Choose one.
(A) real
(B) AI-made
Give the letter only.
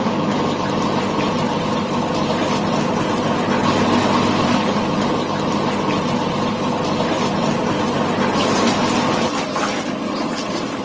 B